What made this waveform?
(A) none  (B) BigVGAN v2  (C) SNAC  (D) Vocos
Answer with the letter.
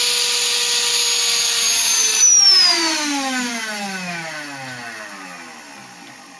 A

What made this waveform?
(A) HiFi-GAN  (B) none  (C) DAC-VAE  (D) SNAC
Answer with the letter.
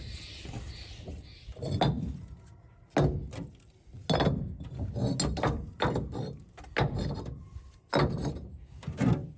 B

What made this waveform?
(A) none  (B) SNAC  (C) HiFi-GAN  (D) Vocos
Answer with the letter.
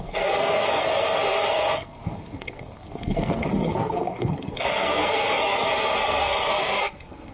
B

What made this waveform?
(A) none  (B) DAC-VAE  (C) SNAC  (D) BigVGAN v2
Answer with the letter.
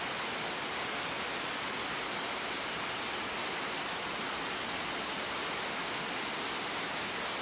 A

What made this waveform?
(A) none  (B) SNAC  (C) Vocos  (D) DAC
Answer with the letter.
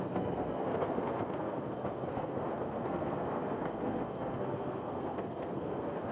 B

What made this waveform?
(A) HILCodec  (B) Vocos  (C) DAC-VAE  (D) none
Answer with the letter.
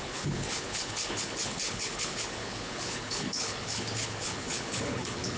A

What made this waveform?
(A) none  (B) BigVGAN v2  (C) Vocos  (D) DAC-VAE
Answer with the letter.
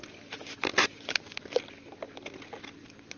B